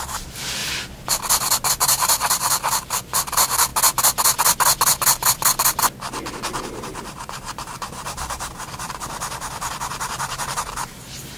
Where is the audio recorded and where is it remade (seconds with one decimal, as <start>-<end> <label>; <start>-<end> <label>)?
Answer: 0.0-0.6 remade; 0.6-1.7 recorded; 1.7-3.7 remade; 3.7-6.7 recorded; 6.7-11.4 remade